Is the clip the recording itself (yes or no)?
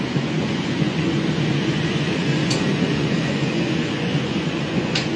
no